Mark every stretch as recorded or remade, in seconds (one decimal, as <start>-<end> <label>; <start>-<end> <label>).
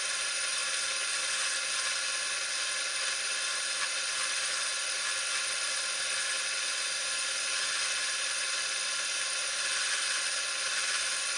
0.0-0.6 remade; 0.6-2.8 recorded; 2.8-4.7 remade; 4.7-9.5 recorded; 9.5-11.4 remade